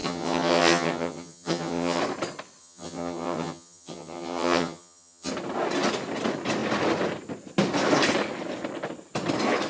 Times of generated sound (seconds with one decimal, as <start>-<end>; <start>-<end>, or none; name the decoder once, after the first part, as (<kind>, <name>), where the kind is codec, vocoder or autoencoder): 0.0-2.0 (vocoder, HiFi-GAN); 2.6-5.3